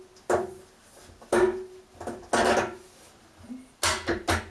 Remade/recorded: recorded